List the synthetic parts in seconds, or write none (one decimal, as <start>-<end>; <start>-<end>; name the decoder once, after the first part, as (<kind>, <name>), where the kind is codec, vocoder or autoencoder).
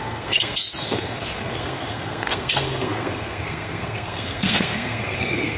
0.0-5.6 (codec, SNAC)